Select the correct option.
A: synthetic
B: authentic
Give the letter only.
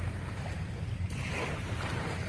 A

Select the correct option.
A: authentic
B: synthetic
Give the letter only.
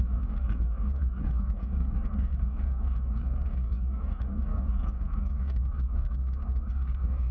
B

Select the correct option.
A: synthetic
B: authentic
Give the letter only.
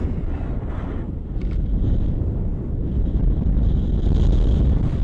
B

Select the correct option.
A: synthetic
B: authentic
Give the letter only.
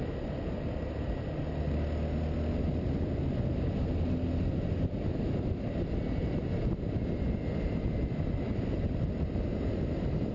B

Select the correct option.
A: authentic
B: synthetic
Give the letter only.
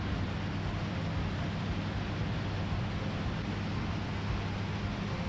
A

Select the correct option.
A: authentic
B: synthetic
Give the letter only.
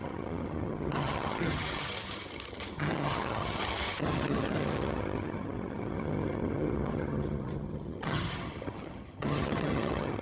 B